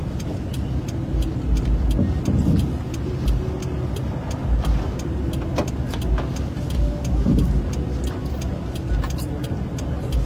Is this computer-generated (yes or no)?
no